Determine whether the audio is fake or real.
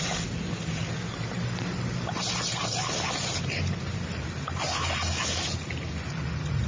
real